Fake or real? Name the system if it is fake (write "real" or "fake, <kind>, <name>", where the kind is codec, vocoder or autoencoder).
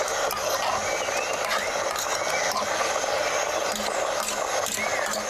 real